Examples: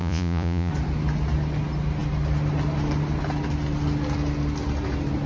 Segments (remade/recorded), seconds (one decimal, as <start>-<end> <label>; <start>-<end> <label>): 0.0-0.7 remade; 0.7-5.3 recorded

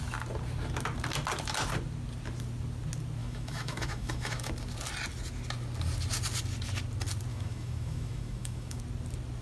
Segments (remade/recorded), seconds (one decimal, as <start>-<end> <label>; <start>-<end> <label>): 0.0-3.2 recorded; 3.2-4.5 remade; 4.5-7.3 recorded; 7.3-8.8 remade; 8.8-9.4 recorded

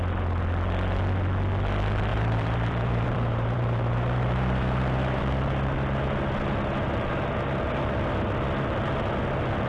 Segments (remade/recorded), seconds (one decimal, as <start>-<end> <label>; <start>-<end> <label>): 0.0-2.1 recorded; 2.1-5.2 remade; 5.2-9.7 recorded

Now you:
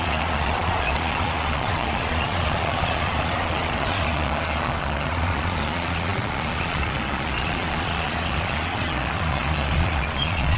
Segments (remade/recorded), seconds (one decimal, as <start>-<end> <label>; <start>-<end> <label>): 0.0-10.6 remade

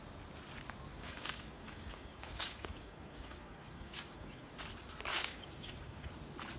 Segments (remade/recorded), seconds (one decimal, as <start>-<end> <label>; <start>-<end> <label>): 0.0-0.9 recorded; 0.9-4.5 remade; 4.5-5.1 recorded; 5.1-6.1 remade; 6.1-6.6 recorded

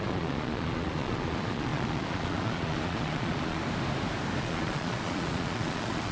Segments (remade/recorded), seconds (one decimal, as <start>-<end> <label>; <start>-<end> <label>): 0.0-3.6 remade; 3.6-4.4 recorded; 4.4-6.1 remade

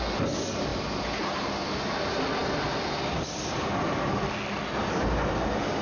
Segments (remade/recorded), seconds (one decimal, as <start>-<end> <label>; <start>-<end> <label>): 0.0-5.8 recorded

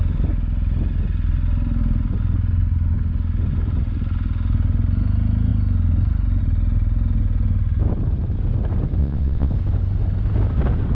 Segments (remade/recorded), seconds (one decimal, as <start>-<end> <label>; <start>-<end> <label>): 0.0-9.0 recorded; 9.0-9.5 remade; 9.5-10.9 recorded